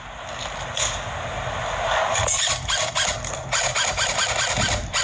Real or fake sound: real